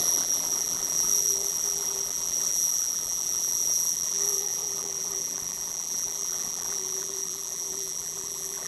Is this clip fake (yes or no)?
yes